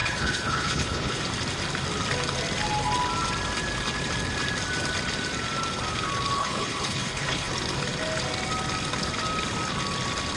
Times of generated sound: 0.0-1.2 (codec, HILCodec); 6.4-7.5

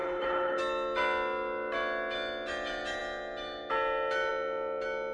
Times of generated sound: 0.0-0.6 (codec, HILCodec)

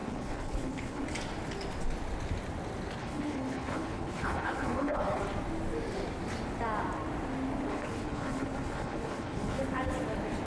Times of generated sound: 0.0-1.0 (codec, HILCodec); 3.0-5.2; 7.7-9.6

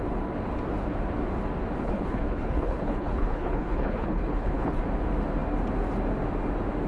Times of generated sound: 1.8-4.8 (codec, HILCodec)